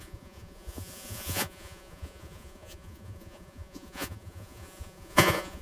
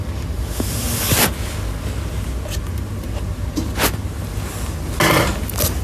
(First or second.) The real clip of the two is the second